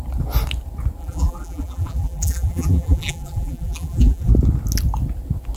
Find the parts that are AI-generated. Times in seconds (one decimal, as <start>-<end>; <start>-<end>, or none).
1.0-4.3